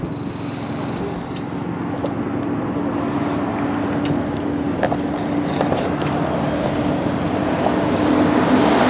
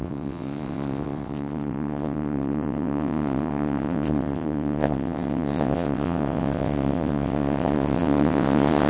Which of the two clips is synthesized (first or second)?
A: second